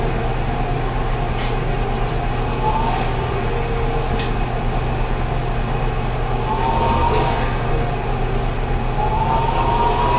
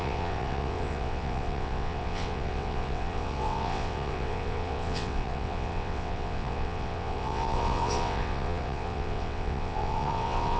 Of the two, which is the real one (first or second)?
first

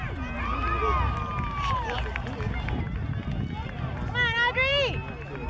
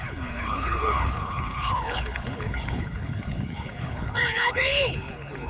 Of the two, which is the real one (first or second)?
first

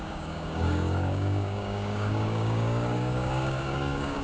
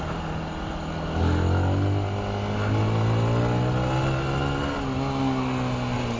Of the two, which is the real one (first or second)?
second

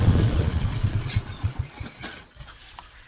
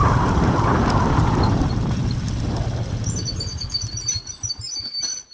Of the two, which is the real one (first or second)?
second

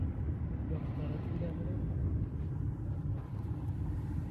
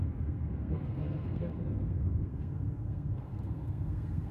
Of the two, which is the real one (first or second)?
first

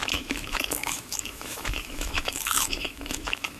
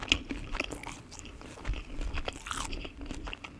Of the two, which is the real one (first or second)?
second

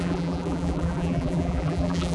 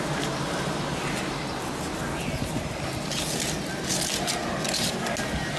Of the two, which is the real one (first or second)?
second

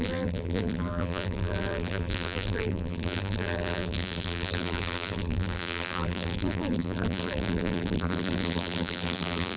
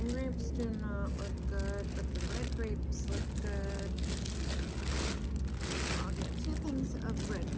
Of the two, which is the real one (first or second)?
second